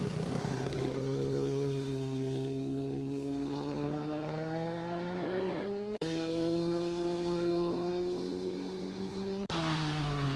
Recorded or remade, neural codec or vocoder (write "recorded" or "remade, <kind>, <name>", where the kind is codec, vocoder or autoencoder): remade, codec, SNAC